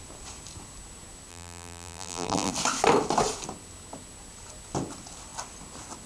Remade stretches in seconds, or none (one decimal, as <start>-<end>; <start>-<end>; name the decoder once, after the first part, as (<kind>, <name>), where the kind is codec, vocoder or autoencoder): 1.3-2.5 (vocoder, BigVGAN v2)